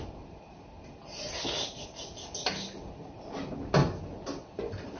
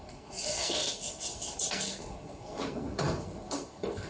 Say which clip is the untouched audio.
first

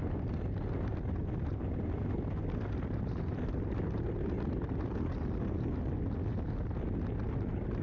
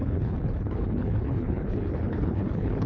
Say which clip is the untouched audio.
first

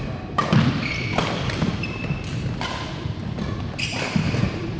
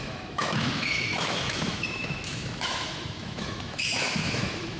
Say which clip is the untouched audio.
first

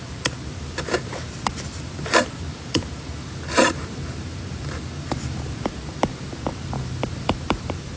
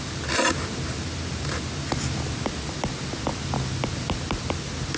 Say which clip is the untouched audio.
second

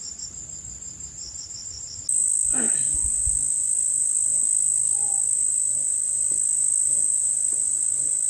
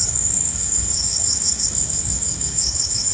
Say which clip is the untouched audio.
first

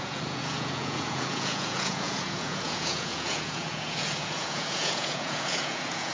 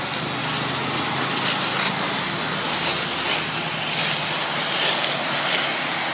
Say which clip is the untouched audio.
second